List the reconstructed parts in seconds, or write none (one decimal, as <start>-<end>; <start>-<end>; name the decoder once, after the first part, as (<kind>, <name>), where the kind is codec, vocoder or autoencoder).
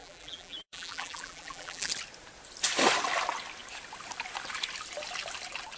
0.0-1.9 (vocoder, BigVGAN v2)